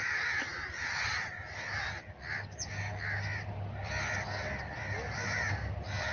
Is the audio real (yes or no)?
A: yes